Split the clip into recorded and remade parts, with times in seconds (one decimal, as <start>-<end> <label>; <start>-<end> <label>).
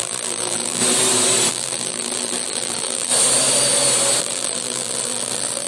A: 0.0-0.8 remade; 0.8-1.5 recorded; 1.5-3.1 remade; 3.1-4.2 recorded; 4.2-5.7 remade